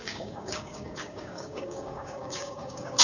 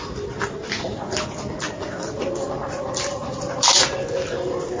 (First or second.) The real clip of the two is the second